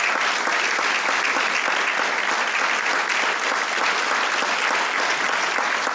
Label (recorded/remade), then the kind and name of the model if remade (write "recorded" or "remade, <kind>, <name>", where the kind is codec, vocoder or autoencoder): recorded